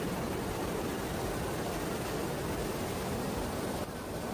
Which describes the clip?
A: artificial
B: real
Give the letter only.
B